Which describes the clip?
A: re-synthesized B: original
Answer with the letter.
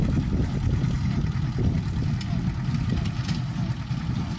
B